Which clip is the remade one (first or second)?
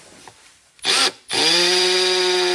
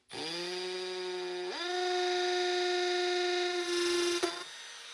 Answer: first